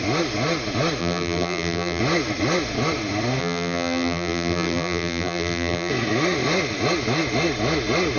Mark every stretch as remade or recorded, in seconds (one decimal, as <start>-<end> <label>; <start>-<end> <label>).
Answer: 0.0-1.0 recorded; 1.0-2.0 remade; 2.0-3.4 recorded; 3.4-5.9 remade; 5.9-8.2 recorded